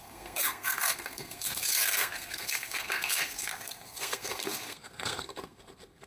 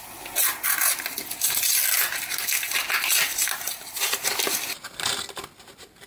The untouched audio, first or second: second